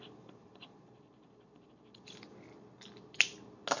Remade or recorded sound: recorded